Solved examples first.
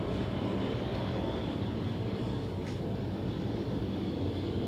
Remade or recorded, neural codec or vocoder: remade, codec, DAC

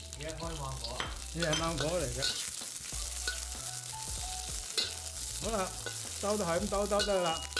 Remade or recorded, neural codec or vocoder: recorded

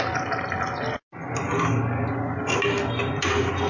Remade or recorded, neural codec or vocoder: recorded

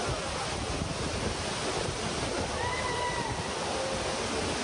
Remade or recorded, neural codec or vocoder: recorded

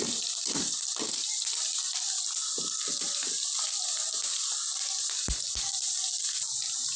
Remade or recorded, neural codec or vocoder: recorded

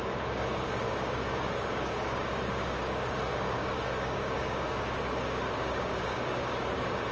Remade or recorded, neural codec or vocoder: remade, codec, DAC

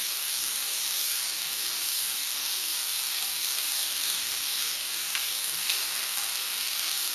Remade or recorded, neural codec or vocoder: remade, codec, DAC